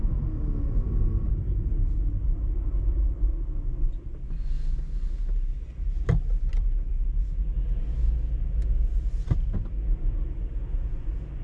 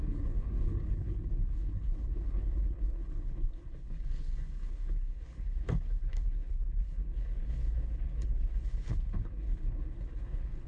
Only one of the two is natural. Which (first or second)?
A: first